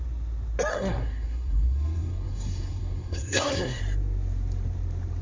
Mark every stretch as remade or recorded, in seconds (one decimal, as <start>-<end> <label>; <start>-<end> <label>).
0.0-0.7 recorded; 0.7-3.8 remade; 3.8-5.2 recorded